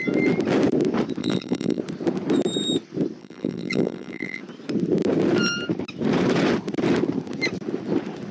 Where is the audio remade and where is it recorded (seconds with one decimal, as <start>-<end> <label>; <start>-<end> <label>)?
0.0-1.2 recorded; 1.2-1.8 remade; 1.8-3.2 recorded; 3.2-4.4 remade; 4.4-8.3 recorded